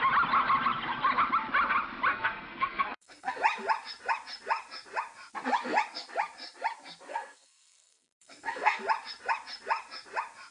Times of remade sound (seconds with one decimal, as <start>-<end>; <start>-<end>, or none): 2.1-3.4; 7.1-8.8